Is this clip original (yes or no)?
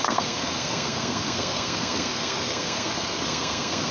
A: no